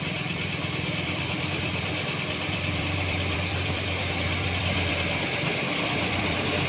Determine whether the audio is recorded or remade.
remade